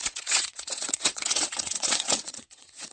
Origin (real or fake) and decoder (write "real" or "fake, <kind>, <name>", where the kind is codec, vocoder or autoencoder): fake, vocoder, WaveNeXt